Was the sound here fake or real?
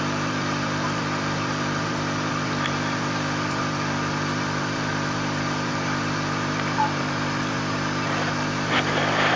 fake